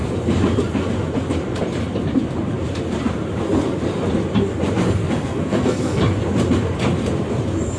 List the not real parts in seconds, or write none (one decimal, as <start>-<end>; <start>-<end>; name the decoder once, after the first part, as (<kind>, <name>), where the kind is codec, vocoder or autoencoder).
5.0-6.0 (codec, SNAC)